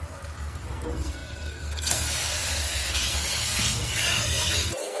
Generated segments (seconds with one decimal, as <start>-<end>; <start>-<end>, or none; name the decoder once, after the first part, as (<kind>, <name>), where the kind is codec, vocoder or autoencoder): 0.0-5.0 (codec, SNAC)